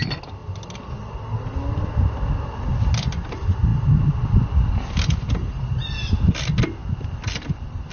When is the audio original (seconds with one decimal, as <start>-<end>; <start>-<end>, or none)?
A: 0.0-7.9